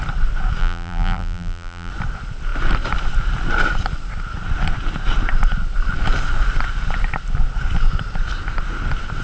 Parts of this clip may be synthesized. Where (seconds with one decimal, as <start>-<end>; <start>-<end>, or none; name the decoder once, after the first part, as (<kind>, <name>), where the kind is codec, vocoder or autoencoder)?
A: 0.6-1.9 (vocoder, BigVGAN v2)